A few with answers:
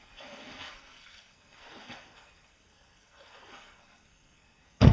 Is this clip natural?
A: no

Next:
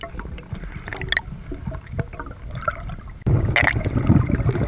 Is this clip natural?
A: yes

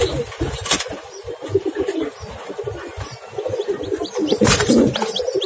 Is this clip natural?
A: yes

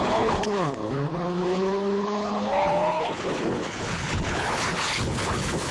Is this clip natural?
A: no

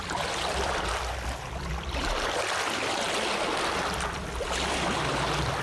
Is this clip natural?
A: yes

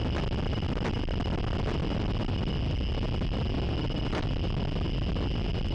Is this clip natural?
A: yes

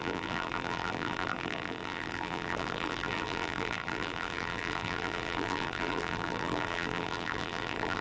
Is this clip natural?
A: no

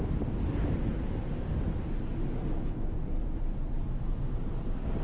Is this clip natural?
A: yes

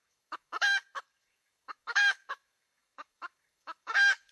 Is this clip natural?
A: no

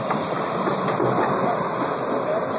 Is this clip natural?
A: yes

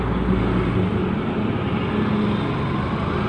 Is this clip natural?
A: yes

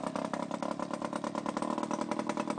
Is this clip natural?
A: yes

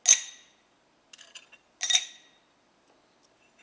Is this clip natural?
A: yes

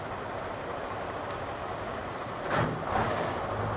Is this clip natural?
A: yes